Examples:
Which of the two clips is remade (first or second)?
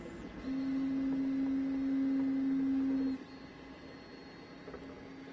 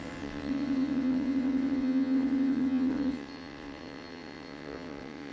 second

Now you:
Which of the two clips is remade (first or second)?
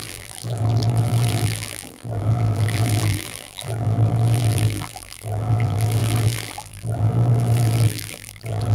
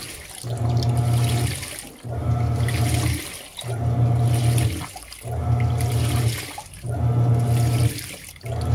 first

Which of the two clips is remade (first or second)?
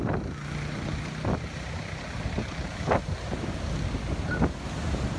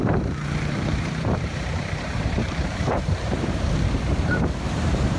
second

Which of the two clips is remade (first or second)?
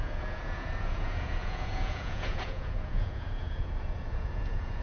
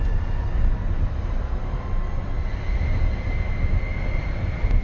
first